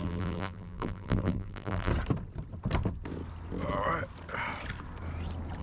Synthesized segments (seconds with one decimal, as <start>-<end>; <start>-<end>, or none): 0.0-1.9